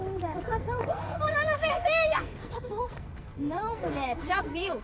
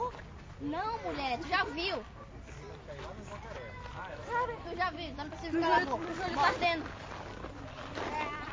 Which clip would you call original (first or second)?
second